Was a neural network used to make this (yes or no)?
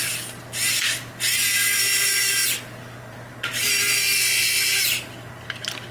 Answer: no